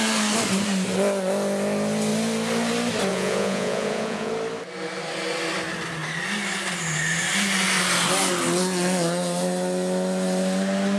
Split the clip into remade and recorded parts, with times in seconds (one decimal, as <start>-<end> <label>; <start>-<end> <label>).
0.0-3.1 recorded; 3.1-4.3 remade; 4.3-11.0 recorded